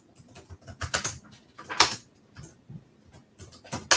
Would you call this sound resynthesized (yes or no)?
no